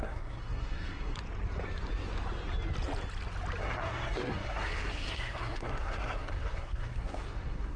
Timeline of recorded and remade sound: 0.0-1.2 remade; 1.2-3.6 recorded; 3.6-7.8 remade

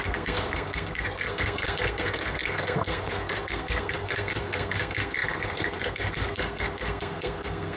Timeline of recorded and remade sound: 0.0-7.8 remade